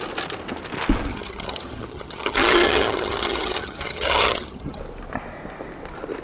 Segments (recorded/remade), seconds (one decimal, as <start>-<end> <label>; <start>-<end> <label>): 0.0-1.1 recorded; 1.1-4.8 remade; 4.8-6.2 recorded